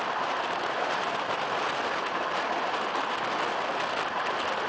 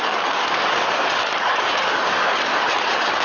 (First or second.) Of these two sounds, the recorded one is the first